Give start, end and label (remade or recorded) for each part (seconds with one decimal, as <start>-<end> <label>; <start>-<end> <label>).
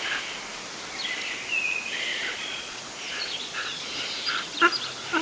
0.0-2.1 recorded; 2.1-3.8 remade; 3.8-5.2 recorded